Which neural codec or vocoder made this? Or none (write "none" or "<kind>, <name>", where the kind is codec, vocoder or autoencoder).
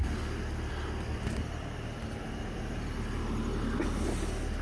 none